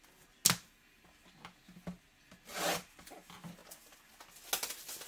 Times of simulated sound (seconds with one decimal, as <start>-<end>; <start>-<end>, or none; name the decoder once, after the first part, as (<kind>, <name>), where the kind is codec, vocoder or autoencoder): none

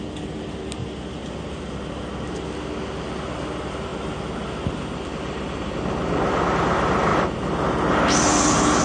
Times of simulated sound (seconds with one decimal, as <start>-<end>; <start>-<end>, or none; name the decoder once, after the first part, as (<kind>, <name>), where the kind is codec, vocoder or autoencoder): 0.8-1.9 (vocoder, BigVGAN v2)

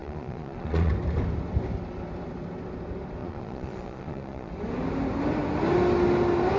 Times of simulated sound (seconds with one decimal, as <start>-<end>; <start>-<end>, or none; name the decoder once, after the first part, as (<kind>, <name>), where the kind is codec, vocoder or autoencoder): 0.0-0.9 (vocoder, Vocos); 3.2-4.5

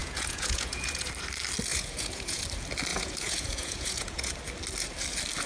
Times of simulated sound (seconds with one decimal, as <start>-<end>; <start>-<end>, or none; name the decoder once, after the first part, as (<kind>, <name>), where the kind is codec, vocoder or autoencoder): 0.0-1.1 (vocoder, Vocos); 1.7-2.4; 2.9-4.3